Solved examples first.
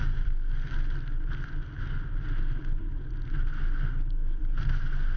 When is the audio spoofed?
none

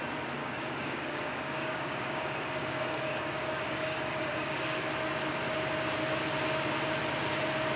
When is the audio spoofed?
0.4-4.9

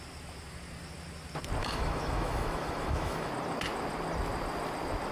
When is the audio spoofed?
1.6-3.3

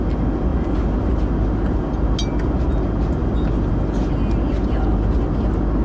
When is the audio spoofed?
none

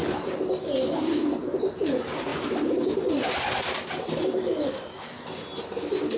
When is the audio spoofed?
none

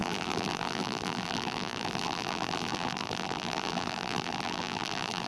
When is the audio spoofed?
0.0-5.3